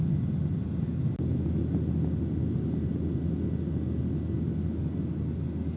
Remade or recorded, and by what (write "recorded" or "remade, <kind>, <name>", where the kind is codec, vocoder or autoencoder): recorded